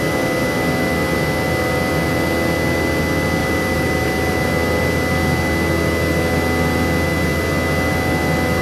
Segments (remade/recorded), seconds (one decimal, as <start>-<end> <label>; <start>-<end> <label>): 0.0-3.4 recorded; 3.4-4.5 remade; 4.5-8.6 recorded